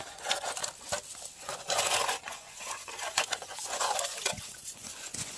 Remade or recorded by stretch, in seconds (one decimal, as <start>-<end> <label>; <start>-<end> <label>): 0.0-0.6 remade; 0.6-1.4 recorded; 1.4-5.4 remade